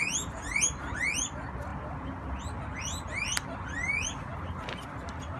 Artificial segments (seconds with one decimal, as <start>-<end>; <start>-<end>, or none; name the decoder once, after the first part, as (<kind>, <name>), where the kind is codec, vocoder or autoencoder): none